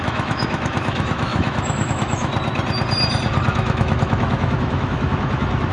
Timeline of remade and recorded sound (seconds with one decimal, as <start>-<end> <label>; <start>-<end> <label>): 0.0-2.3 remade; 2.3-3.5 recorded; 3.5-5.7 remade